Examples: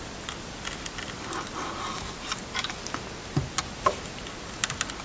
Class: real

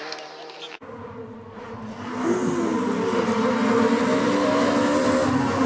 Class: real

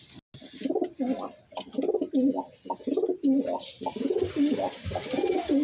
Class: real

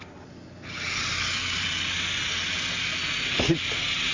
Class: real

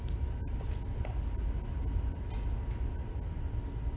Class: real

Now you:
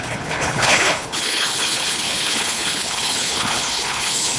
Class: fake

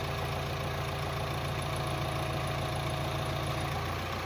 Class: real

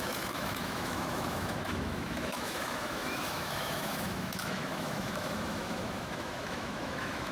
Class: fake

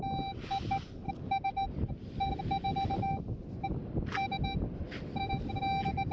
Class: real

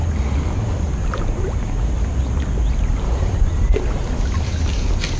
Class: fake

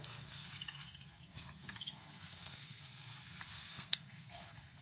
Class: fake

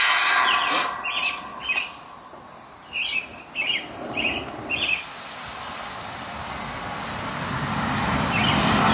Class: real